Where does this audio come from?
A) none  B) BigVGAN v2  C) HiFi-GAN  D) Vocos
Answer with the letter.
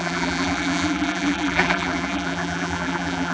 B